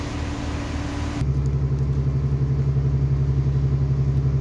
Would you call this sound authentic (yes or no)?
yes